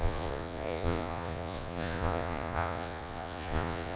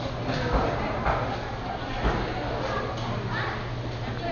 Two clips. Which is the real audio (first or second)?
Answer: second